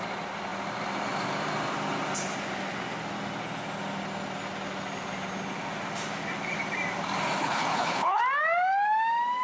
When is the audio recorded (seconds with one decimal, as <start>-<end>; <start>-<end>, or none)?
0.0-7.4; 8.2-9.4